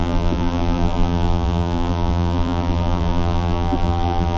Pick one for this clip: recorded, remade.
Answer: remade